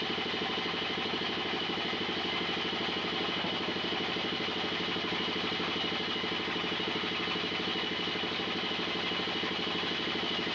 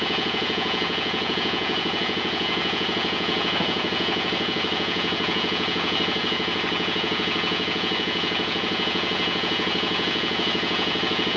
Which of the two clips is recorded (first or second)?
first